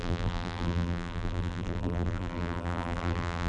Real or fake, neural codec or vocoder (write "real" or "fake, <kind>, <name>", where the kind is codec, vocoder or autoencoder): fake, vocoder, BigVGAN v2